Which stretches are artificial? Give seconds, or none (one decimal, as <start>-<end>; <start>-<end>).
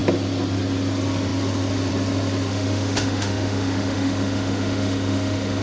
2.5-5.6